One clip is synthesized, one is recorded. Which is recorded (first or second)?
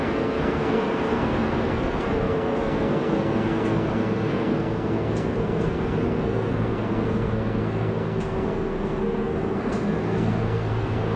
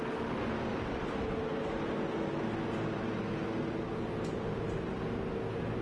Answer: second